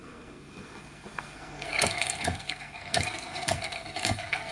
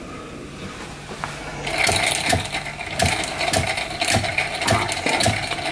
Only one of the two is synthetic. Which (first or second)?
first